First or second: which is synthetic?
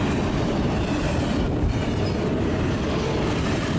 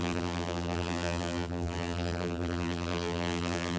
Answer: second